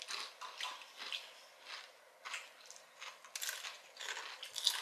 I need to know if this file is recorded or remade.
recorded